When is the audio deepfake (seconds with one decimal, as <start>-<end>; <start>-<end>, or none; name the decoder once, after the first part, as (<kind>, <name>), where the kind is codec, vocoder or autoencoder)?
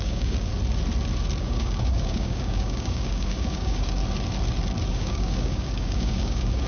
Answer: 0.0-0.5 (codec, DAC); 1.4-4.0; 4.9-6.7